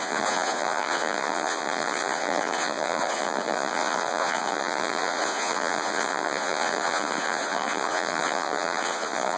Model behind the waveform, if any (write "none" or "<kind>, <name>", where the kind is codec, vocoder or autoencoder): vocoder, Vocos